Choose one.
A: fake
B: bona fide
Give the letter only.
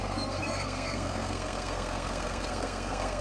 A